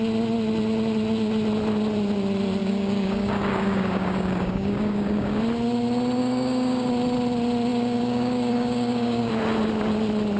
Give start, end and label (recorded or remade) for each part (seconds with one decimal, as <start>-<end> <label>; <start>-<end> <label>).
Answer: 0.0-2.6 recorded; 2.6-5.4 remade; 5.4-6.2 recorded; 6.2-6.9 remade; 6.9-7.7 recorded; 7.7-9.3 remade; 9.3-10.4 recorded